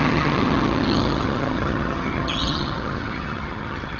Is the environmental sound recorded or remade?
remade